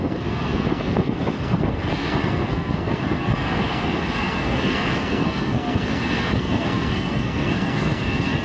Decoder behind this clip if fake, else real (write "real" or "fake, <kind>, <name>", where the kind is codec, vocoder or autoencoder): fake, codec, SNAC